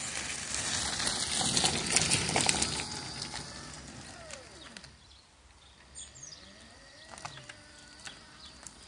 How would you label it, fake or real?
real